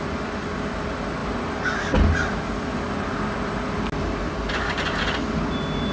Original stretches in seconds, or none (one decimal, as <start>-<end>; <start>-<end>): 0.0-5.9